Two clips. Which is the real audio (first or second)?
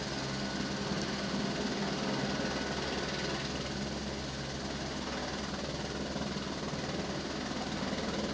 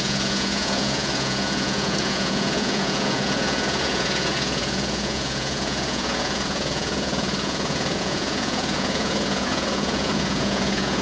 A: first